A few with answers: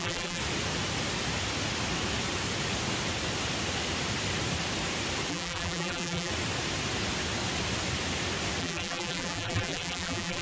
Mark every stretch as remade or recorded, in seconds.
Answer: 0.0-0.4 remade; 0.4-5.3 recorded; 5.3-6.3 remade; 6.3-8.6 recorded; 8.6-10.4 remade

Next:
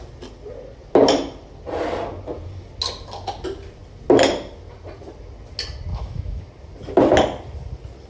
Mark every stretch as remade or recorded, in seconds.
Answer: 0.0-5.9 recorded; 5.9-6.4 remade; 6.4-8.1 recorded

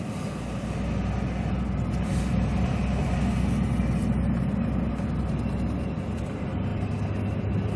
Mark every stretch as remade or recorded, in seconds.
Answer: 0.0-7.8 recorded